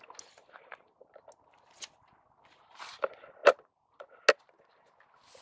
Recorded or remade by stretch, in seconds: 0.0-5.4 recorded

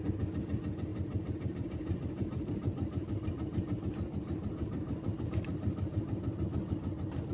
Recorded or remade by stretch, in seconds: 0.0-0.9 recorded; 0.9-5.3 remade; 5.3-7.3 recorded

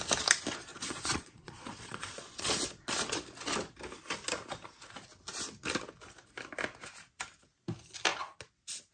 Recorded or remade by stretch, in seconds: 0.0-0.7 recorded; 0.7-2.5 remade; 2.5-8.9 recorded

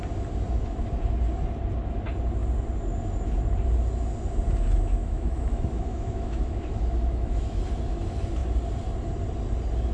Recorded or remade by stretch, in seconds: 0.0-5.0 recorded; 5.0-7.6 remade; 7.6-9.9 recorded